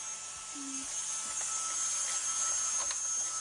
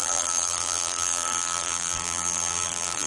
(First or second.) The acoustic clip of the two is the first